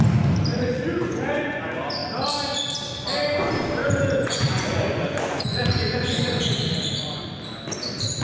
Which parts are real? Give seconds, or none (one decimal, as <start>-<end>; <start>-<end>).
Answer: 0.0-0.5; 1.6-3.8; 7.2-8.2